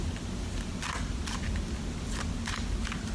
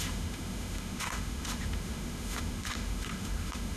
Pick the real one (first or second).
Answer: first